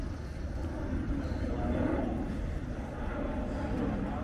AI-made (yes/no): no